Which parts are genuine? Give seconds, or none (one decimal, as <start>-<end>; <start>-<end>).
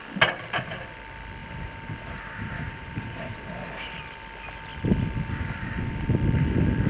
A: 0.0-1.4; 3.5-6.9